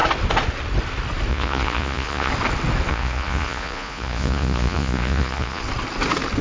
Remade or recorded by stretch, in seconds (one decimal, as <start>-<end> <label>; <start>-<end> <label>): 0.0-1.3 recorded; 1.3-2.3 remade; 2.3-2.9 recorded; 2.9-5.6 remade; 5.6-6.4 recorded